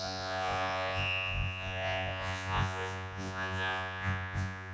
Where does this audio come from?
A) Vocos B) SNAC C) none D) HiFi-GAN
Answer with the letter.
A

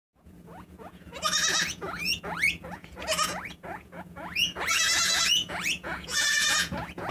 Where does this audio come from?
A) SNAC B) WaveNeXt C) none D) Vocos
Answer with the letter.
D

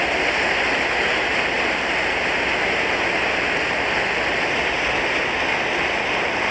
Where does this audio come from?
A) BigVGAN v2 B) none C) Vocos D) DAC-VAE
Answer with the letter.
B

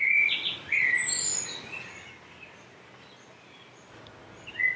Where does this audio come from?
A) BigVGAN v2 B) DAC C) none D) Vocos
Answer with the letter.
C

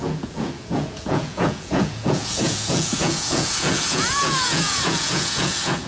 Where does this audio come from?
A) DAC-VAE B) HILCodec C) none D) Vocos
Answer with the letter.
D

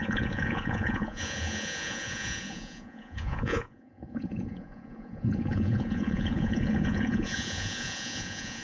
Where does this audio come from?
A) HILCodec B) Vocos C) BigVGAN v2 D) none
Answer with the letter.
B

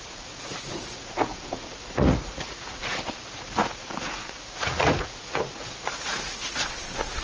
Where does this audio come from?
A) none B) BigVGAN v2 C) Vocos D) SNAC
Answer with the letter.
C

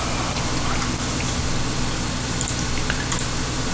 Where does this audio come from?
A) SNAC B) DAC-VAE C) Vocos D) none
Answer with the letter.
D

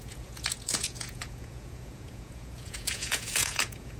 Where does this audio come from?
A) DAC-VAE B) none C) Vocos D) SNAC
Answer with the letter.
C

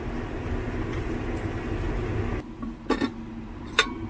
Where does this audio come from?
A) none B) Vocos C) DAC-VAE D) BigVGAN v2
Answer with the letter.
A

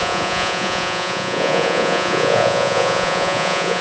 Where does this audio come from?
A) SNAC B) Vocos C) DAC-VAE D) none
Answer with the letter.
B